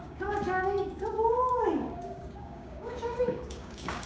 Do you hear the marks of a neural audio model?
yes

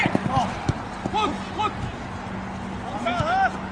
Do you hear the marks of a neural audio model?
no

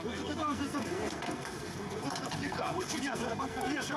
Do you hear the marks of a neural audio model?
yes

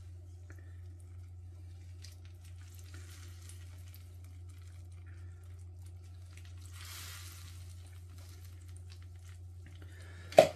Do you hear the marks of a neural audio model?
no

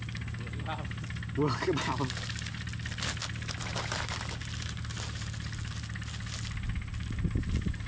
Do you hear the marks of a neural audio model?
no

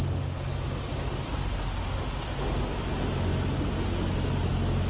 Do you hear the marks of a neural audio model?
no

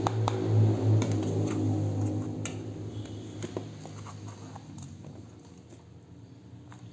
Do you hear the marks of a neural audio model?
no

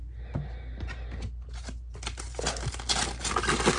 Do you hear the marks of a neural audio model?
no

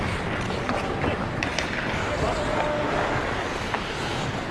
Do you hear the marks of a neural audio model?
no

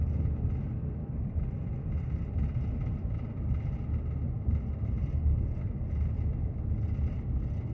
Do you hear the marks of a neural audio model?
no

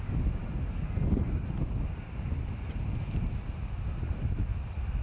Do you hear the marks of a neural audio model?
no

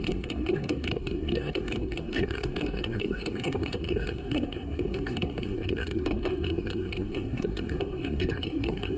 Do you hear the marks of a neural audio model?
yes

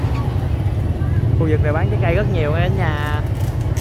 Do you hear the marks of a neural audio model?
no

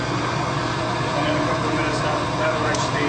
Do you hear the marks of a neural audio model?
no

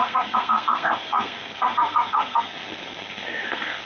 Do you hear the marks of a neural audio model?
yes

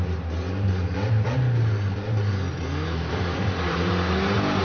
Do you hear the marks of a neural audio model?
no